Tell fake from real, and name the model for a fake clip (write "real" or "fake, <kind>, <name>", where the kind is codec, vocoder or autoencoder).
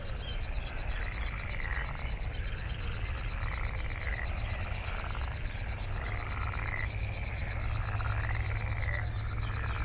real